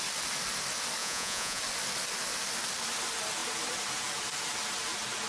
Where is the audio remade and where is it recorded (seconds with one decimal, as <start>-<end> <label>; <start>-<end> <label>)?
0.0-1.0 recorded; 1.0-1.6 remade; 1.6-5.3 recorded